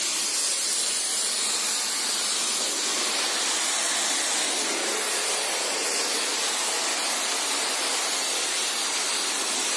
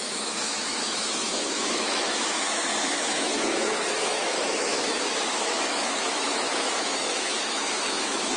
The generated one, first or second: second